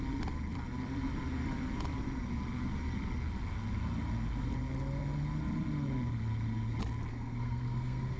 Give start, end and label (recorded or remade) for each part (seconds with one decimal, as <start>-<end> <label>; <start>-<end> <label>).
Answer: 0.0-7.1 recorded; 7.1-8.2 remade